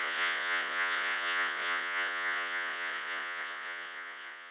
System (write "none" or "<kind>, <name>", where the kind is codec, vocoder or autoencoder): vocoder, Vocos